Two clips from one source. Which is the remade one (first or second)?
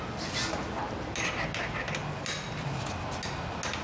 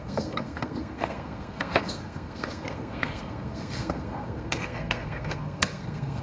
second